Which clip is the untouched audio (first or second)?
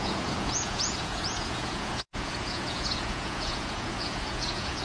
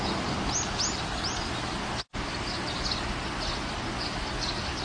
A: second